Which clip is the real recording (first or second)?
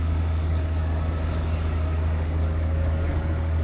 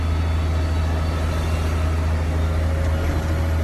second